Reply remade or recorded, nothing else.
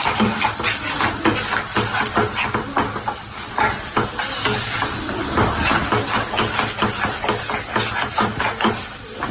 recorded